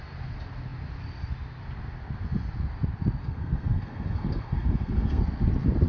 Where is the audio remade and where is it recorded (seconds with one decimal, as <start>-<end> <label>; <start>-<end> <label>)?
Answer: 0.0-3.2 recorded; 3.2-5.2 remade; 5.2-5.9 recorded